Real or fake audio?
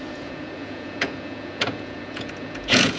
fake